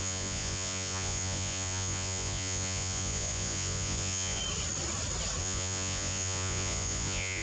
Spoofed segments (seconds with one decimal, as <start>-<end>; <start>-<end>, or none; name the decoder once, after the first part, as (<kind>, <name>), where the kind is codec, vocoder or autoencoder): 0.0-4.4 (vocoder, Vocos); 5.4-7.4